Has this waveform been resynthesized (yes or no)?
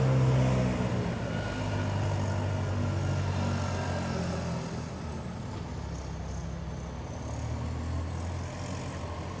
no